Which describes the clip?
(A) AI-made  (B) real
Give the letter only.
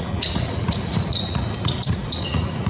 A